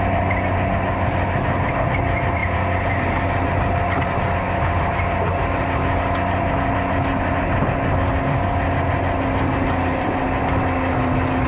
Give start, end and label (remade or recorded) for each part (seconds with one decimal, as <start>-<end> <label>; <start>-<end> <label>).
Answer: 0.0-11.5 recorded